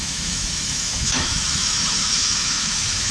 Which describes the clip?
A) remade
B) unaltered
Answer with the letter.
A